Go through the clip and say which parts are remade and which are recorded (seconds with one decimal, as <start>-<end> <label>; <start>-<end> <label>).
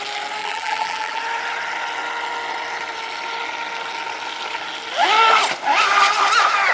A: 0.0-0.4 recorded; 0.4-1.2 remade; 1.2-6.7 recorded